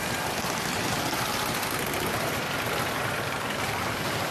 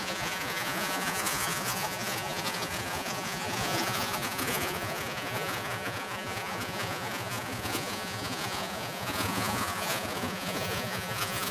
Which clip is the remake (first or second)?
second